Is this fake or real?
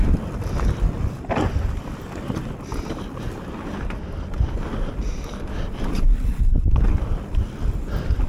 real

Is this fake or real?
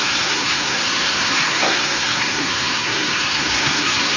fake